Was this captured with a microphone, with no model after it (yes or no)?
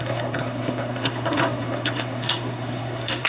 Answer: no